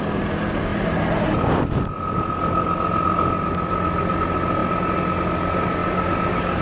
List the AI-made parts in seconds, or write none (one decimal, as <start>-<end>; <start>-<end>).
none